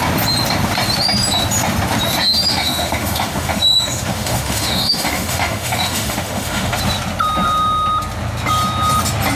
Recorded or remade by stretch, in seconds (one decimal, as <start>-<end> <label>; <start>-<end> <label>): 0.0-2.5 recorded; 2.5-6.8 remade; 6.8-9.4 recorded